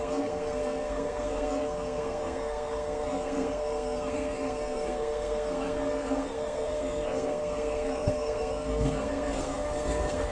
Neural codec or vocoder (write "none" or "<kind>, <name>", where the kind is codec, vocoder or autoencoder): codec, SNAC